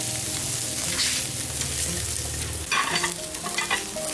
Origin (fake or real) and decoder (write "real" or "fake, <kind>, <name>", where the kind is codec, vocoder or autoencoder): real